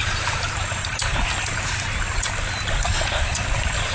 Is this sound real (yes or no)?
yes